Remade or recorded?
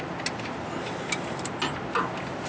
recorded